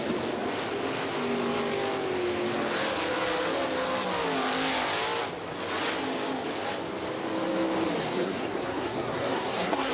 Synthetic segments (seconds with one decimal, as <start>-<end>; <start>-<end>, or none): 8.0-9.9